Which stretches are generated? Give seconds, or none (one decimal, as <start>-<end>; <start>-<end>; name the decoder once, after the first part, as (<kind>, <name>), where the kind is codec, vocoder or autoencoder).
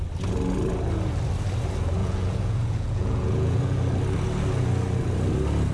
2.0-3.8 (vocoder, Vocos)